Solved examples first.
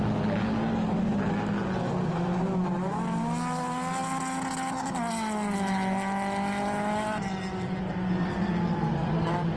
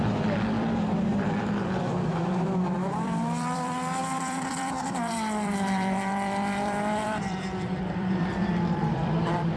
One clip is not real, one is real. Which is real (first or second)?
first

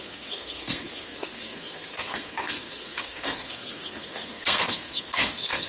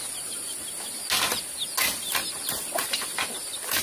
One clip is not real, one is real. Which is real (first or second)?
second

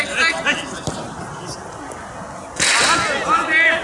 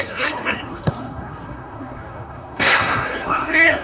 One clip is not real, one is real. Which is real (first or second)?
first